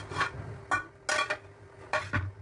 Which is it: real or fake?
real